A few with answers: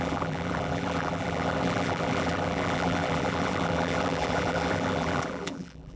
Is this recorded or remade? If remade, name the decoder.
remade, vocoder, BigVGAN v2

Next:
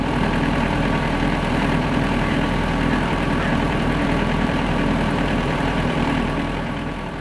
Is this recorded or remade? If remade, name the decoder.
remade, vocoder, BigVGAN v2